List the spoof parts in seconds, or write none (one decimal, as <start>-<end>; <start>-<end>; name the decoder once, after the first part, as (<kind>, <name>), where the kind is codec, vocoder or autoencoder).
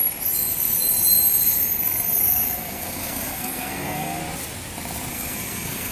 2.2-4.2 (codec, SNAC); 5.1-5.9